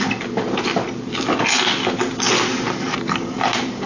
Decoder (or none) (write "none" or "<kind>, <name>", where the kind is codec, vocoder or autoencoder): none